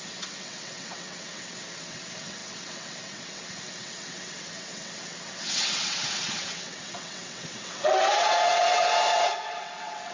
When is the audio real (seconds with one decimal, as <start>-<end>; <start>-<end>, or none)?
none